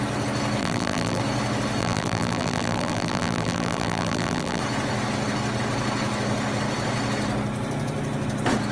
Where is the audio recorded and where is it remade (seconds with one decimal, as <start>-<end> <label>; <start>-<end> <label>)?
0.0-0.6 recorded; 0.6-1.2 remade; 1.2-1.8 recorded; 1.8-4.6 remade; 4.6-8.7 recorded